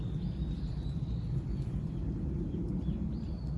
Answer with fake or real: fake